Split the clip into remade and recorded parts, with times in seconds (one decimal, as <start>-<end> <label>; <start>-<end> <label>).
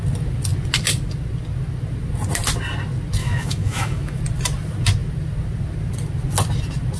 0.0-3.2 recorded; 3.2-4.2 remade; 4.2-7.0 recorded